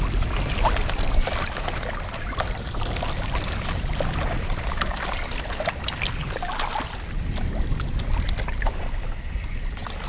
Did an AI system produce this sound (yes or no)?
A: no